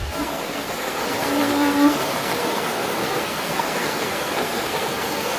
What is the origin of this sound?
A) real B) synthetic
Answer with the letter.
B